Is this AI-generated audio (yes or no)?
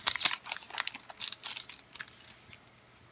no